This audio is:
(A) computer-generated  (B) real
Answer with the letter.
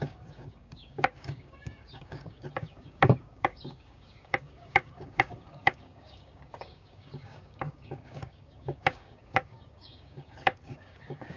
A